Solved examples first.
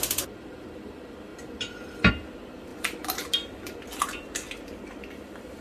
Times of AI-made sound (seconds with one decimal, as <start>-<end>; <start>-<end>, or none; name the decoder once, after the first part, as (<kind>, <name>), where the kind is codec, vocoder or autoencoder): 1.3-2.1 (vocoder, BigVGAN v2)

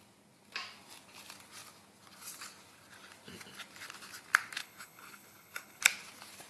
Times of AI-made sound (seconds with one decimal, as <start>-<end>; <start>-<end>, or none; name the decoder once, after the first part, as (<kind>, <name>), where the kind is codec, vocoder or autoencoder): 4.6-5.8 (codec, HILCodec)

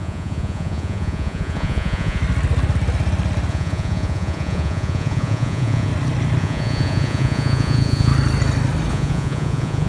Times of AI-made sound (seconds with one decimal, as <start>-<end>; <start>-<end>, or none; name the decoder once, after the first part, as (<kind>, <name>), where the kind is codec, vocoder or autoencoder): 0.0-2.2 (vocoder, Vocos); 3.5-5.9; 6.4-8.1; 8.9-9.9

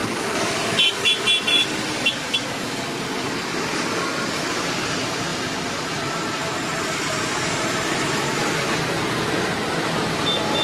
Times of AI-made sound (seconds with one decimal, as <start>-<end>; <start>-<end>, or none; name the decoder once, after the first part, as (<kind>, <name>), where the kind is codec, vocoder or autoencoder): 0.0-1.1 (codec, DAC); 1.5-4.5

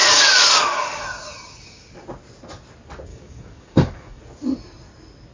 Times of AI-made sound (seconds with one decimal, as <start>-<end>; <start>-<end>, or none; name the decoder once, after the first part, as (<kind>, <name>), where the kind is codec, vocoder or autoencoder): 0.0-1.0 (codec, DAC); 3.1-4.2